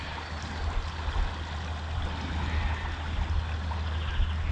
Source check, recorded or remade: recorded